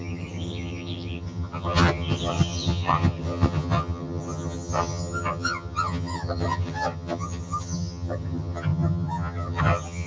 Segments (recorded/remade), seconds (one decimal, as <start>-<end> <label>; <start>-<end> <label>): 0.0-10.1 remade